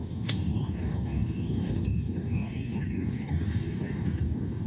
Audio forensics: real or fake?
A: fake